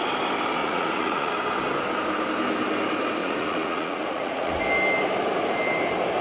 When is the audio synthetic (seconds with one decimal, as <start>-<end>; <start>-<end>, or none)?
0.6-1.3; 3.2-4.6